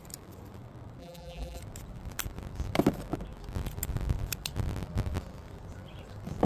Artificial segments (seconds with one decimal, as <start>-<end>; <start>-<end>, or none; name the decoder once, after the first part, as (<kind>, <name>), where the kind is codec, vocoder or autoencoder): 1.0-1.6 (vocoder, BigVGAN v2)

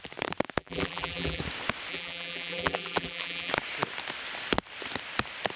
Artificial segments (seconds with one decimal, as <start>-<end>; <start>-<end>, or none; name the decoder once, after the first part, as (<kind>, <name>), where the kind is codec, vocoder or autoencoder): 0.6-1.4 (vocoder, BigVGAN v2); 1.9-3.5

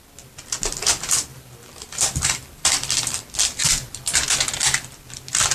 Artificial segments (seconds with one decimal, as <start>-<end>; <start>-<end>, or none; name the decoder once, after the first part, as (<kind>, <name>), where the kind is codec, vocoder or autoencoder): 1.3-3.7 (vocoder, BigVGAN v2)

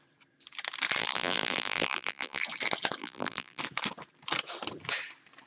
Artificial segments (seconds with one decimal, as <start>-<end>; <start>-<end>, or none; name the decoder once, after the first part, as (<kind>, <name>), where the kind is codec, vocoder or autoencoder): 1.0-2.4 (vocoder, BigVGAN v2); 3.0-3.6

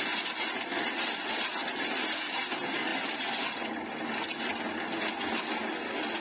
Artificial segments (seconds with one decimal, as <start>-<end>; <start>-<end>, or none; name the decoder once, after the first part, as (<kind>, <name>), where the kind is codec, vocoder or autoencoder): 2.9-3.9 (vocoder, BigVGAN v2)

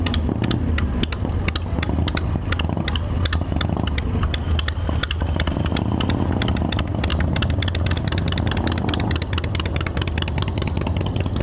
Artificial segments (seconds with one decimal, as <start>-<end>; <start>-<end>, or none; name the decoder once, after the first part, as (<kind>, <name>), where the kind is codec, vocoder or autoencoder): 7.1-7.6 (vocoder, BigVGAN v2)

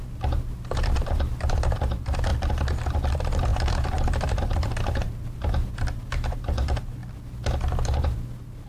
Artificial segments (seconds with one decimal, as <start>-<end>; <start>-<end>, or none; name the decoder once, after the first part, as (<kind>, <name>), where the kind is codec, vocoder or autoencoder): 0.0-2.3 (vocoder, BigVGAN v2); 3.1-7.0; 8.0-8.7

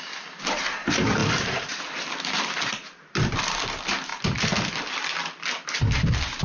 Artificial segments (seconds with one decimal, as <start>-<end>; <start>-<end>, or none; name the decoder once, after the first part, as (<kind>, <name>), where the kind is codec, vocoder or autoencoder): 1.2-2.5 (vocoder, BigVGAN v2); 4.1-5.3